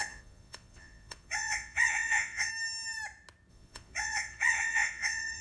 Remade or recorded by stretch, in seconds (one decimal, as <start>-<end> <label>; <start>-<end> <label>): 0.0-2.5 remade; 2.5-3.5 recorded; 3.5-5.4 remade